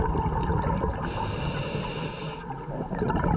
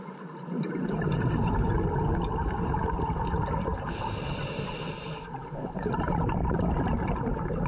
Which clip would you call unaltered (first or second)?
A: first